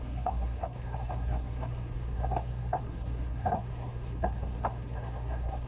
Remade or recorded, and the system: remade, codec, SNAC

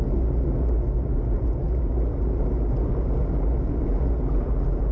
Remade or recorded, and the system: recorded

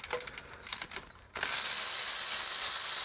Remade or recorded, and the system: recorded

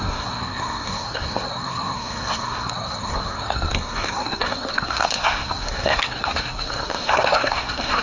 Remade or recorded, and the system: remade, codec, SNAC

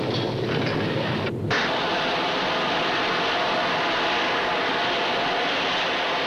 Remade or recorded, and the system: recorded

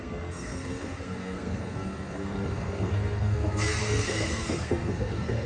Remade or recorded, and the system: remade, codec, SNAC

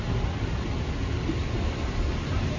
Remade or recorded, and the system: recorded